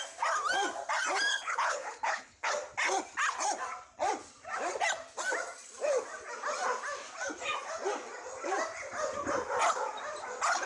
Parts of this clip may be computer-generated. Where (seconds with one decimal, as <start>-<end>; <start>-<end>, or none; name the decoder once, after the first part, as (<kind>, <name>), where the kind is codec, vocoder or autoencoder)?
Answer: 1.3-2.5 (codec, HILCodec)